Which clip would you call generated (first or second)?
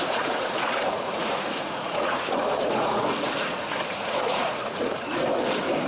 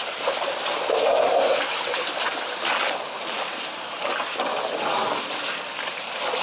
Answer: first